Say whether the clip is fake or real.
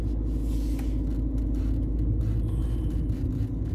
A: real